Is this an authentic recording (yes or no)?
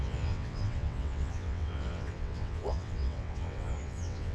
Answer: no